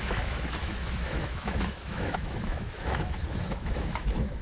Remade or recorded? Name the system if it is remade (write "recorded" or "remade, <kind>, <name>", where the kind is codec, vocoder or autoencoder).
remade, autoencoder, DAC-VAE